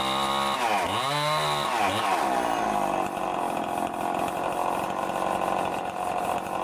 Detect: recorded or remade recorded